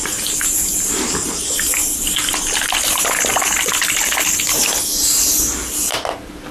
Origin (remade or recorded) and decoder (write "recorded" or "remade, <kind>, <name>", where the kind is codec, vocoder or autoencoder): recorded